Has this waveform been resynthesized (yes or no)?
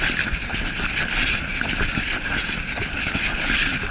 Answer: no